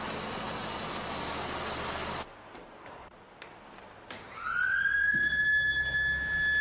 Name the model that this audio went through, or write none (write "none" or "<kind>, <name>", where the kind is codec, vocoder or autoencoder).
none